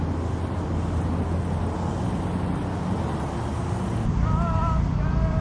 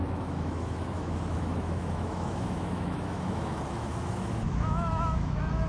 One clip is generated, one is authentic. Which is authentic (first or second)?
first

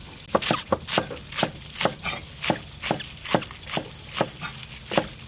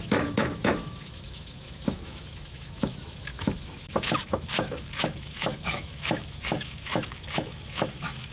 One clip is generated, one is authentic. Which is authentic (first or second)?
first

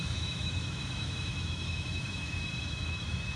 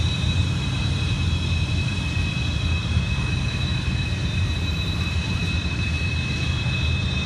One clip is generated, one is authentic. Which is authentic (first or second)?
second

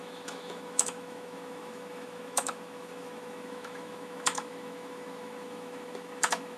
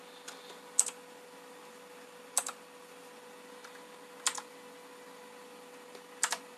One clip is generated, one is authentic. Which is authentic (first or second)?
second